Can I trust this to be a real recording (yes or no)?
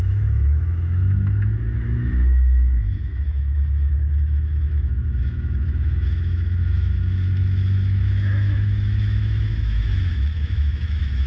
no